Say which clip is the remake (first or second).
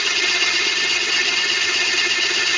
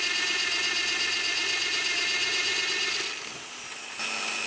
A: first